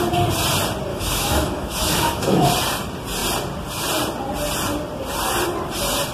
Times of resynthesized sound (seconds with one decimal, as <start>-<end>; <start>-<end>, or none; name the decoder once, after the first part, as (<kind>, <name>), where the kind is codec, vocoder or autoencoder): 0.9-2.5 (autoencoder, DAC-VAE)